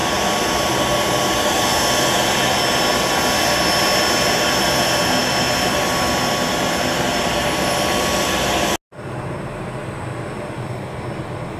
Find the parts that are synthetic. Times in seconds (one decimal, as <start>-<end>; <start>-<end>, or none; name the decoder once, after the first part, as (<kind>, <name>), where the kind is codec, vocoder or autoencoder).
none